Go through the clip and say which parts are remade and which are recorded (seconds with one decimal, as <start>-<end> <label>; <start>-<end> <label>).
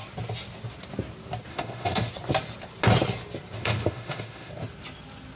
0.0-1.5 recorded; 1.5-2.1 remade; 2.1-3.6 recorded; 3.6-4.5 remade; 4.5-5.4 recorded